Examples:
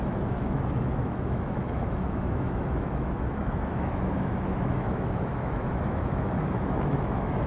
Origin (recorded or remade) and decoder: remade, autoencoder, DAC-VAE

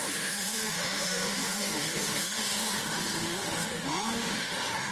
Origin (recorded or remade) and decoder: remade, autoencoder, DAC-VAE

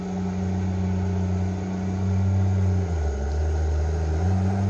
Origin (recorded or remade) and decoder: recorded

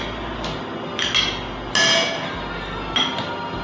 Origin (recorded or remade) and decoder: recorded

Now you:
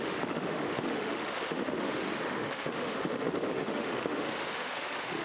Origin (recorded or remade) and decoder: remade, autoencoder, DAC-VAE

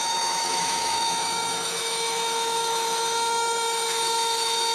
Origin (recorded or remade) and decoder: remade, autoencoder, DAC-VAE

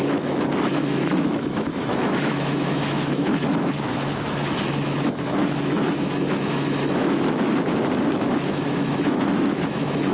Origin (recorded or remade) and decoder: remade, autoencoder, DAC-VAE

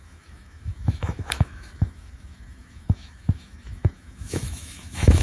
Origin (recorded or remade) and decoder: remade, autoencoder, DAC-VAE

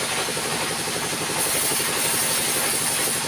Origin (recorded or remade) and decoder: recorded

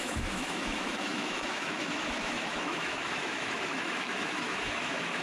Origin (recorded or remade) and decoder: remade, autoencoder, DAC-VAE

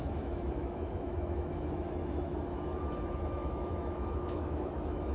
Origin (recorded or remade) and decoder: remade, autoencoder, DAC-VAE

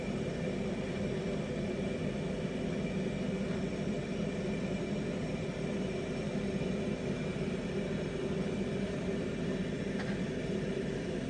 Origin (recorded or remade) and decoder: recorded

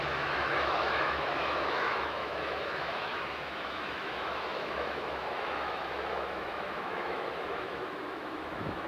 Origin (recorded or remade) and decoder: remade, autoencoder, DAC-VAE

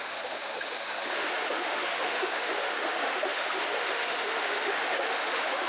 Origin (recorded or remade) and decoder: remade, autoencoder, DAC-VAE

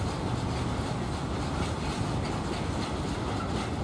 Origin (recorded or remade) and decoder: recorded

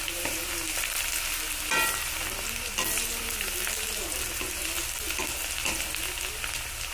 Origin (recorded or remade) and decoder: recorded